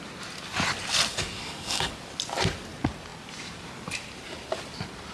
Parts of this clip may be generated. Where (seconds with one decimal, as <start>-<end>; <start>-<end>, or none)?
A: 1.1-1.9